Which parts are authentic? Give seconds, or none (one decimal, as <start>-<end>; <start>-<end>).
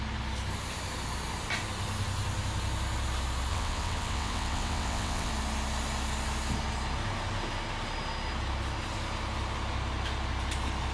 0.0-3.5; 5.3-10.9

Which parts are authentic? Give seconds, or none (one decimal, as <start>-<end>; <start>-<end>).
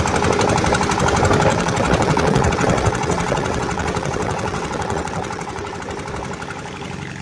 0.0-1.5; 5.8-7.2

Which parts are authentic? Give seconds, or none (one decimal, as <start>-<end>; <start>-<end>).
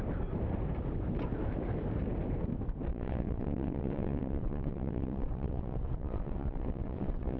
0.0-2.9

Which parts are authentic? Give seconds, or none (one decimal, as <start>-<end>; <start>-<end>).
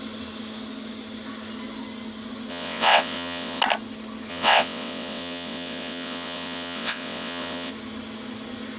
0.0-2.5; 3.6-4.3; 7.7-8.8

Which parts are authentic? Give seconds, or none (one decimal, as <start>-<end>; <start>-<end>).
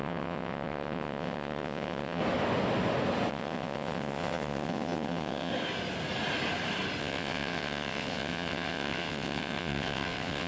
2.2-3.3; 5.5-7.0